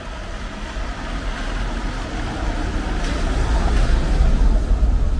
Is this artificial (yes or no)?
no